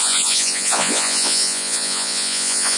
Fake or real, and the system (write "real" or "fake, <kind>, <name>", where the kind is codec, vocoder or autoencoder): fake, vocoder, Vocos